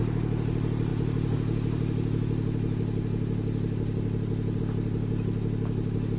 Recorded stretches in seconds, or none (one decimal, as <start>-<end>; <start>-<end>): 0.0-6.2